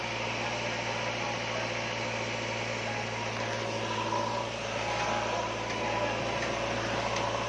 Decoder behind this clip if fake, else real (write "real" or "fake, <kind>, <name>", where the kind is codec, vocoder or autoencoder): real